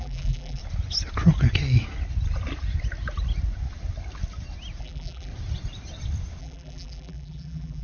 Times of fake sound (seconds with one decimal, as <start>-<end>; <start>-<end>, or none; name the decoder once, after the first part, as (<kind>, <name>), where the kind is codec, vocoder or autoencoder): 0.0-0.6 (vocoder, BigVGAN v2); 4.8-5.3; 6.4-7.8